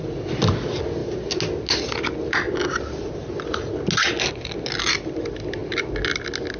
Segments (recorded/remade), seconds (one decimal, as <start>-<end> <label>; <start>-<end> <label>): 0.0-6.6 recorded